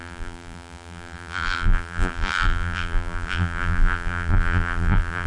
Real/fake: fake